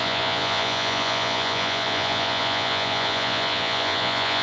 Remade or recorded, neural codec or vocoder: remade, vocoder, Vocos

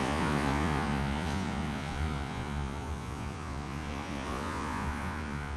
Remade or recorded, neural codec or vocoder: remade, vocoder, Vocos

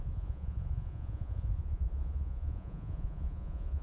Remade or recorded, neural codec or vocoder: remade, vocoder, Vocos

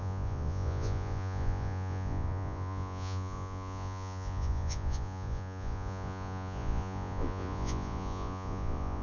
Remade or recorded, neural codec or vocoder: remade, vocoder, Vocos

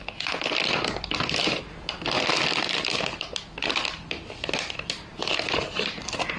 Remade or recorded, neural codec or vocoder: recorded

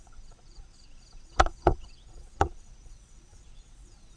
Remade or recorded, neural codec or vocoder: remade, vocoder, Vocos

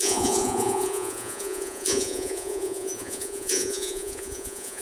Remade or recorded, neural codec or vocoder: remade, vocoder, Vocos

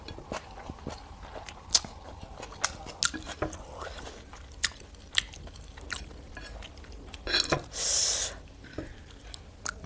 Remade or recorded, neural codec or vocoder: recorded